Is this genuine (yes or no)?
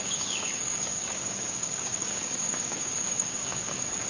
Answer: no